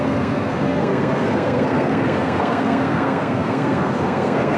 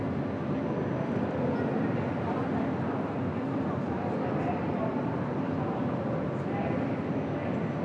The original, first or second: second